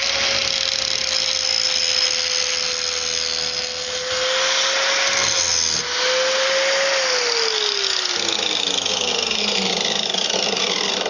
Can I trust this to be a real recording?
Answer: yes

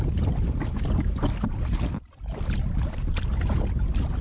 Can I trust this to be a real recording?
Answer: yes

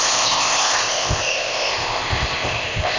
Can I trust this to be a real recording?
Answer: no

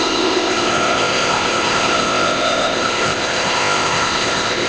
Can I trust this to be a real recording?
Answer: no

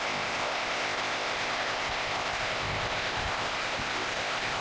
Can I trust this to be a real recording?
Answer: no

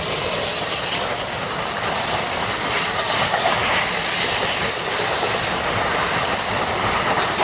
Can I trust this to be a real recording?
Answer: yes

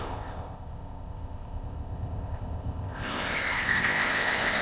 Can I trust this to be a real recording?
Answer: no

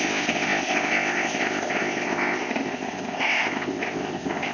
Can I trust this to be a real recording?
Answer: no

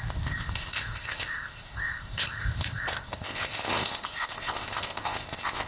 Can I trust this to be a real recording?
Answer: no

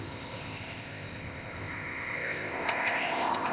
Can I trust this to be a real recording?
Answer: no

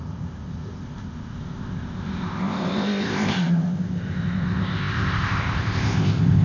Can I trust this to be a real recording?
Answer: no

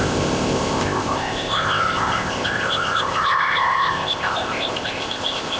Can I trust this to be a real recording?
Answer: no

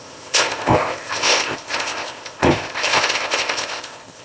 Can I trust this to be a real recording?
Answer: no